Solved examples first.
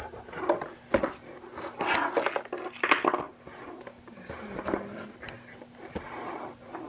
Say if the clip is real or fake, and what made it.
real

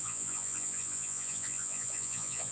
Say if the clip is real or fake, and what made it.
fake, vocoder, Vocos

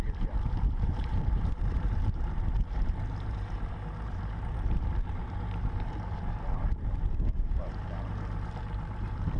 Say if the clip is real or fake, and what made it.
fake, vocoder, BigVGAN v2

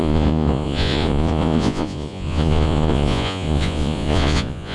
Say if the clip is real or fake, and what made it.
fake, vocoder, Vocos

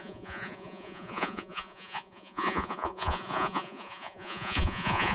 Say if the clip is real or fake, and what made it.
fake, vocoder, Vocos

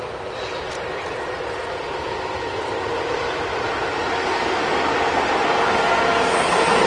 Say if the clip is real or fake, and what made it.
real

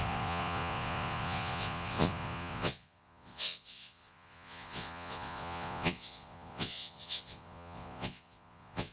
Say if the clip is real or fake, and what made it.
fake, vocoder, Vocos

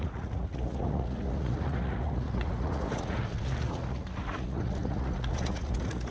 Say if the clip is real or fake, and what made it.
fake, vocoder, Vocos